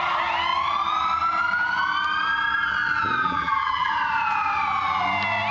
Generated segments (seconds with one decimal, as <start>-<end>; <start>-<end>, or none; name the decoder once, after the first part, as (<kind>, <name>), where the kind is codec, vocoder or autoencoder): 3.2-3.9 (vocoder, BigVGAN v2)